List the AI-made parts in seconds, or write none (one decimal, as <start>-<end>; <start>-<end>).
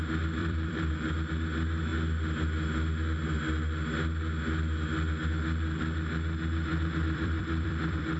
0.4-0.9; 6.7-8.2